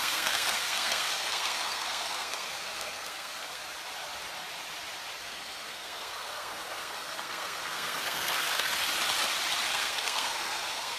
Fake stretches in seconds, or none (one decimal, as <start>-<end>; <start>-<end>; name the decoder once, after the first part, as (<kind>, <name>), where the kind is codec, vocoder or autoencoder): 0.0-3.6 (codec, SNAC); 5.2-8.7; 9.7-11.0

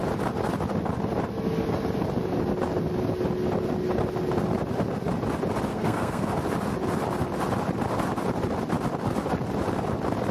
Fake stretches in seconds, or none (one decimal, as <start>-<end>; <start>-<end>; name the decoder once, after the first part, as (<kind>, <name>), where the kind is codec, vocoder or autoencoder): 5.7-6.3 (codec, SNAC)

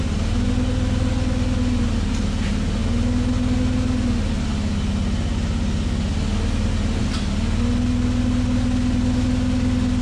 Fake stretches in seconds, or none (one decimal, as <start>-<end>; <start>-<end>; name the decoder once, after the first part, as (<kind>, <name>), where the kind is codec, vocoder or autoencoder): none

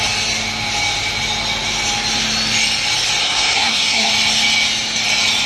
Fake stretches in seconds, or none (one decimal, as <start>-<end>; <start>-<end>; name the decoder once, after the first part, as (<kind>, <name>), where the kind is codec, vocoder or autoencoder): 3.2-4.1 (codec, SNAC)

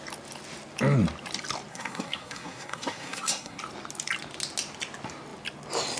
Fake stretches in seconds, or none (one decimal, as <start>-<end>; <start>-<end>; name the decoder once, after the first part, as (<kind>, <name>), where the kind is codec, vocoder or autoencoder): 1.7-3.6 (codec, SNAC)

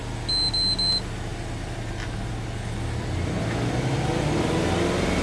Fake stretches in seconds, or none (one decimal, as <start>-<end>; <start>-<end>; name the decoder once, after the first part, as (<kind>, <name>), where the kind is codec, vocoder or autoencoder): none